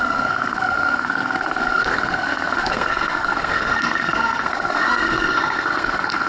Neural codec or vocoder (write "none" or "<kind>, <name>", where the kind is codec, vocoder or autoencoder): codec, SNAC